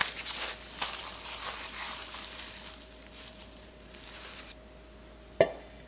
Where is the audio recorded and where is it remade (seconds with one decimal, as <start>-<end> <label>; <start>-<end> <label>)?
0.0-1.0 recorded; 1.0-4.5 remade; 4.5-5.9 recorded